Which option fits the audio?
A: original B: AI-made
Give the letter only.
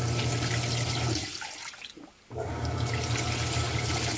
A